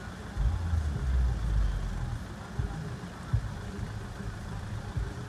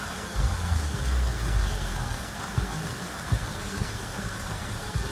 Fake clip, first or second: second